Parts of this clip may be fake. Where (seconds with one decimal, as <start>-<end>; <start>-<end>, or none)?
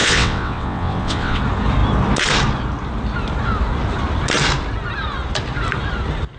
0.0-1.4